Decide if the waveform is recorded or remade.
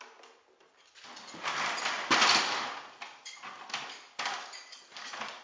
recorded